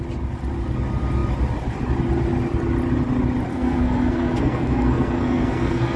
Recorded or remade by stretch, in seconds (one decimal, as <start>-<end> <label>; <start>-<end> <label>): 0.0-3.5 recorded; 3.5-6.0 remade